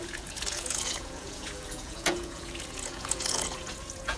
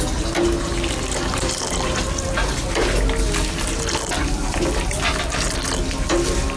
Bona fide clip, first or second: second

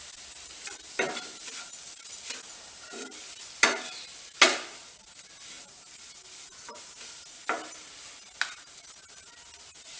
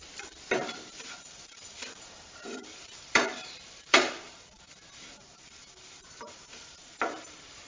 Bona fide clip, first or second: first